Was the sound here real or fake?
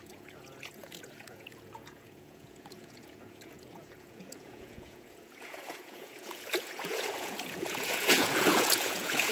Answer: fake